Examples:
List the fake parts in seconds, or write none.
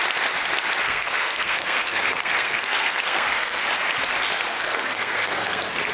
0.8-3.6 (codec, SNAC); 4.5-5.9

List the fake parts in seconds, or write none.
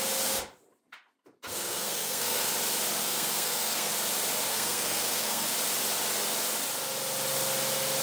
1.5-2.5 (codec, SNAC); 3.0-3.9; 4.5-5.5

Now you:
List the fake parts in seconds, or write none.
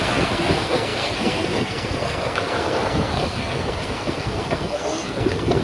0.0-5.6 (codec, SNAC)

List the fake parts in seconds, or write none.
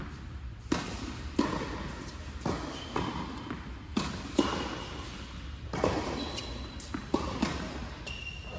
none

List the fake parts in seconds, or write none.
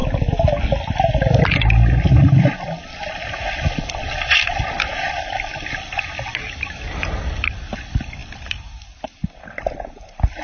none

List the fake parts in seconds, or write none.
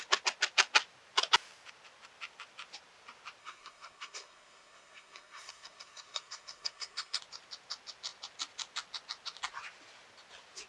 3.4-7.2 (codec, SNAC)